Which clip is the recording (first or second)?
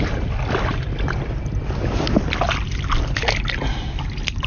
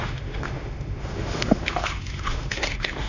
first